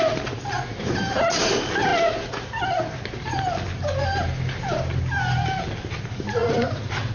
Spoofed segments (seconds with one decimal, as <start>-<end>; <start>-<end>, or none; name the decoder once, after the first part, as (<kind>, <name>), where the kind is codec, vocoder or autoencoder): none